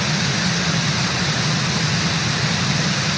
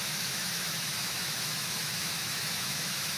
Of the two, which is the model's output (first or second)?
second